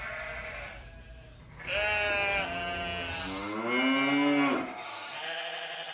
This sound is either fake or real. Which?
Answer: real